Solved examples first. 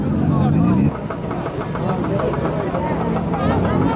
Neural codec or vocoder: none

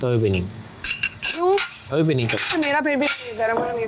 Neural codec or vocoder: codec, DAC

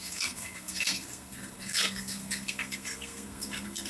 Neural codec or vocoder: codec, SNAC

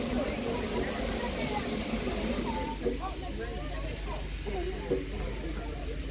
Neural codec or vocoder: none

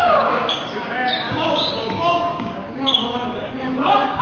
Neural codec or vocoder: codec, DAC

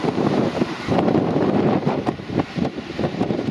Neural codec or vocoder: vocoder, BigVGAN v2